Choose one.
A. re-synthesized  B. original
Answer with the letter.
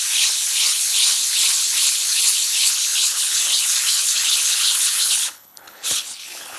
A